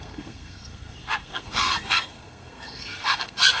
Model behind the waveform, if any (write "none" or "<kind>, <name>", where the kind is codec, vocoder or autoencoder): codec, SNAC